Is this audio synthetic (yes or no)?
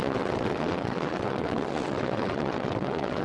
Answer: yes